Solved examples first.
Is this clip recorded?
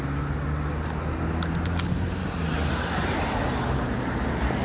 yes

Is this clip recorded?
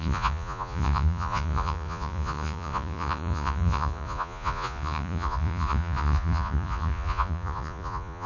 no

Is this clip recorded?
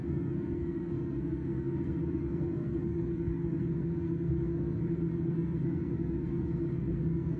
no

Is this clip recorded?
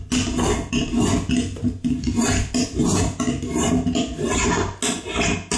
yes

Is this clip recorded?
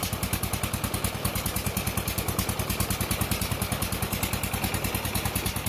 yes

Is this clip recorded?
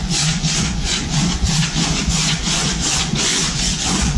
no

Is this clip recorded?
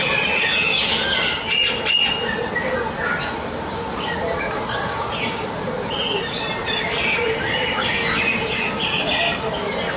yes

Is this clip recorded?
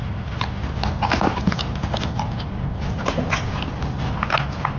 yes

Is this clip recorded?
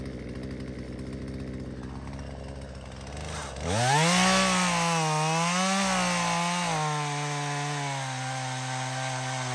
yes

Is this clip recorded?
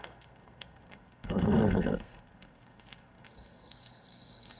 no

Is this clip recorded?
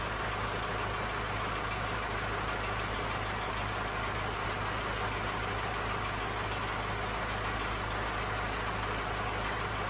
yes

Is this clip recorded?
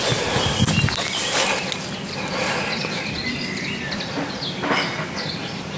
yes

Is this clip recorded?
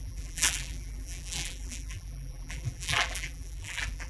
no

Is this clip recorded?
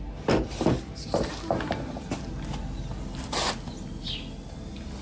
yes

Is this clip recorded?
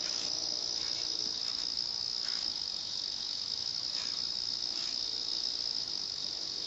no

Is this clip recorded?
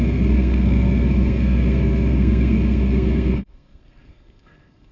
no